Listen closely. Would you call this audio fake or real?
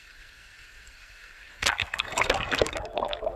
fake